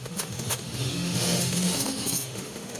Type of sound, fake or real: fake